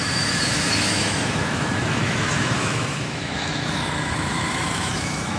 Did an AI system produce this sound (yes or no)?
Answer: yes